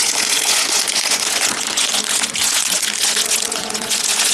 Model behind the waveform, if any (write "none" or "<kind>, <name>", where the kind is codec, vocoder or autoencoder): vocoder, Vocos